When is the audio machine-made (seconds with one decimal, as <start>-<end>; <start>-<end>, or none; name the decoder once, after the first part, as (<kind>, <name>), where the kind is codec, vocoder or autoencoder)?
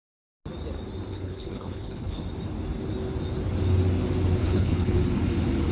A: 1.1-2.2 (codec, HILCodec); 4.4-5.0